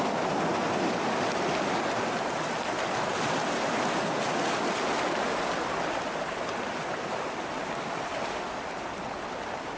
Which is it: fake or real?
real